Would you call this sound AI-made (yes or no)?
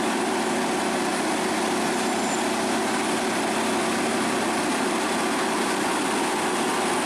no